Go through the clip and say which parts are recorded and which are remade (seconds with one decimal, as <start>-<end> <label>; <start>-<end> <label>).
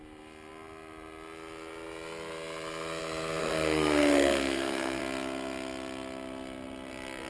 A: 0.0-3.4 recorded; 3.4-5.0 remade; 5.0-7.3 recorded